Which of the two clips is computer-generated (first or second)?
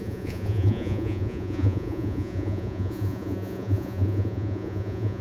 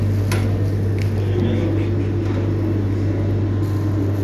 first